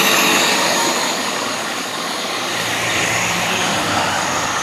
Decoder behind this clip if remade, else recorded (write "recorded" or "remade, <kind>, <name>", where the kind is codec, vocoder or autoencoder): remade, codec, DAC